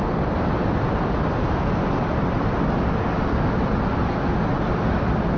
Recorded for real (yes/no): yes